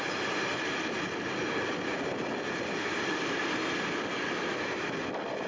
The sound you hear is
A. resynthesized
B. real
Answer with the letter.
B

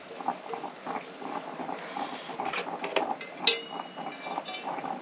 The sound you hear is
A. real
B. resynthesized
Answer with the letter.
A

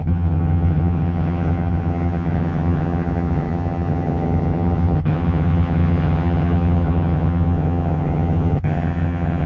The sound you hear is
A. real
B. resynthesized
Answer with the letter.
B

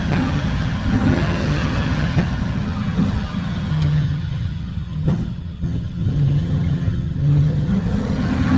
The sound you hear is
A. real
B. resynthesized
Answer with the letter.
B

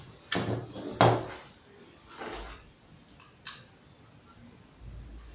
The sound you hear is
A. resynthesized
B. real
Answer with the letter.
B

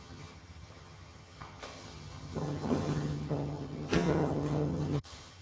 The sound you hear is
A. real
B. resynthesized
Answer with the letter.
B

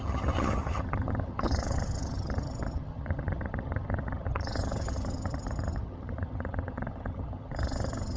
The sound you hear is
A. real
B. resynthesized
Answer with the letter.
B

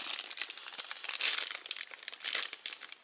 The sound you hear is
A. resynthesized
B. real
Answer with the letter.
B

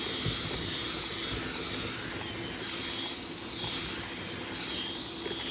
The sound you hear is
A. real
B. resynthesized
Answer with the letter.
A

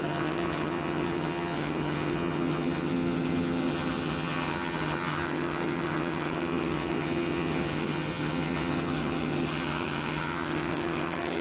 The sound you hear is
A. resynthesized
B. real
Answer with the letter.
A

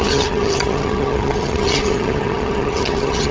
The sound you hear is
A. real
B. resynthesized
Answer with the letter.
B